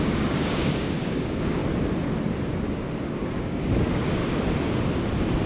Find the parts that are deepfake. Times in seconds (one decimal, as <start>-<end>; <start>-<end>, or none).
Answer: 0.0-1.6; 3.1-4.2